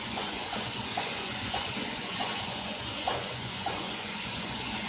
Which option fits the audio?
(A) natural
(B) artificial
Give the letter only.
B